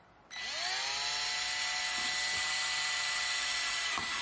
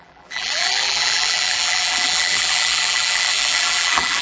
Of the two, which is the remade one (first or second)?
second